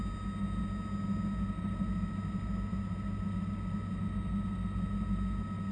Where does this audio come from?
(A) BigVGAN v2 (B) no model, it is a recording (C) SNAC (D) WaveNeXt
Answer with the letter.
B